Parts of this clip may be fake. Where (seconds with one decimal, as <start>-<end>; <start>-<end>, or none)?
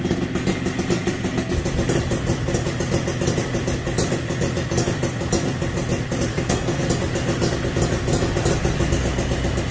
6.3-6.8